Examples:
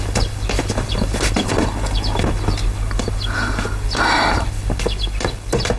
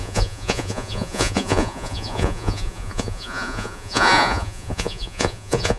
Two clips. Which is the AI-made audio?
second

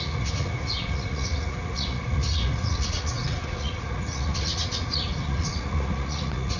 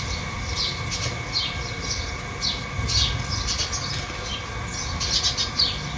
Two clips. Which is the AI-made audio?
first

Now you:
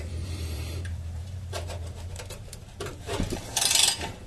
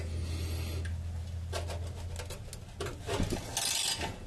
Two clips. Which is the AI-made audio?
first